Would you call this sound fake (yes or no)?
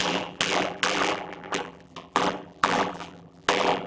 yes